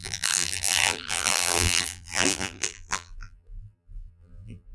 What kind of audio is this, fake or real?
fake